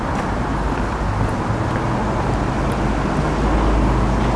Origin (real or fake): real